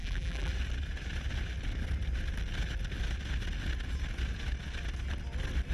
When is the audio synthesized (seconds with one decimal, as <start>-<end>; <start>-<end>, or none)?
0.0-0.5